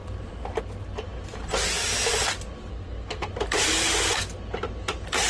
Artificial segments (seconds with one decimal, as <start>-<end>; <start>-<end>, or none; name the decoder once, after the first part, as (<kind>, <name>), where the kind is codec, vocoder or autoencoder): 2.7-3.3 (codec, SNAC)